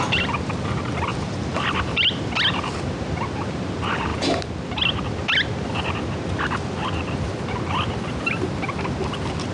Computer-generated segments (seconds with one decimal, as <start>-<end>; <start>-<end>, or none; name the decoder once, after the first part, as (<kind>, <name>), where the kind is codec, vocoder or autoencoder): 1.1-2.1 (vocoder, BigVGAN v2)